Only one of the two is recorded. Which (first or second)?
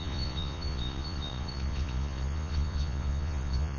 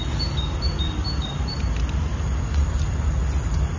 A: second